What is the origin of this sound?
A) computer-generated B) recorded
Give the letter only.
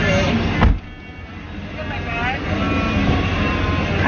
B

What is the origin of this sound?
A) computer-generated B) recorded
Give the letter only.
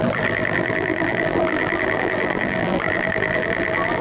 A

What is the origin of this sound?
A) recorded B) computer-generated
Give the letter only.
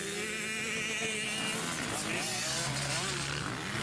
A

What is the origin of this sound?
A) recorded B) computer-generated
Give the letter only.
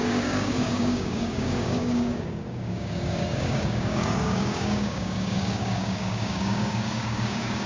B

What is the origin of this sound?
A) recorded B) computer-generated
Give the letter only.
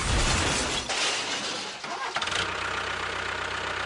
A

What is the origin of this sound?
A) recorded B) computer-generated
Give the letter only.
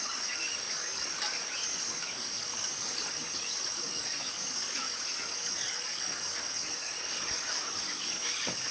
B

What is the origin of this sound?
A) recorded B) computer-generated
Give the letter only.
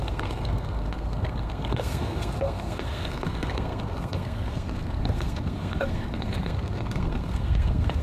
B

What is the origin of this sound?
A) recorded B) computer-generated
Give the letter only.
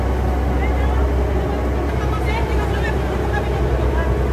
A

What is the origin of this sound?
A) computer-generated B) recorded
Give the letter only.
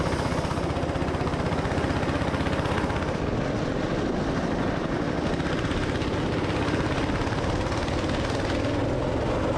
B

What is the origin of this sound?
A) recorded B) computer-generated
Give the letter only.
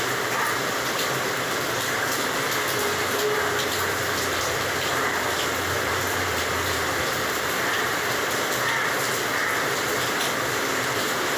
B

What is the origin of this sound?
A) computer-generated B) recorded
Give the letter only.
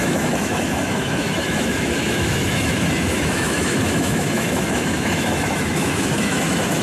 A